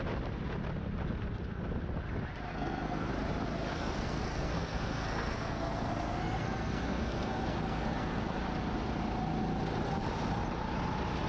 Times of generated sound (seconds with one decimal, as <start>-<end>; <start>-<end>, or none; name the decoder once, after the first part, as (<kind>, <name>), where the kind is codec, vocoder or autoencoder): 2.5-3.1 (codec, SNAC); 3.7-8.2